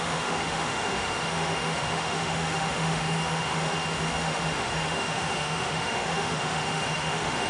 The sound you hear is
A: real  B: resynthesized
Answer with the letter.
B